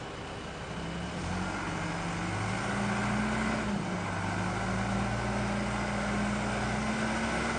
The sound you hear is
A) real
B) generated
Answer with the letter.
A